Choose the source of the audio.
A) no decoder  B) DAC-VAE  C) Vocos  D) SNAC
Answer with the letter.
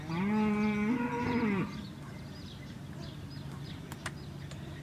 A